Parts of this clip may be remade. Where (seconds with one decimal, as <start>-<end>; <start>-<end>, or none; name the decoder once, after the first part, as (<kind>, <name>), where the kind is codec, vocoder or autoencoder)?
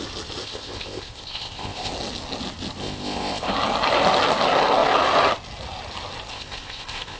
0.4-1.9 (codec, ZipCodec); 2.8-3.5; 6.3-7.2